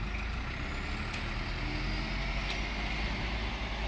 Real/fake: real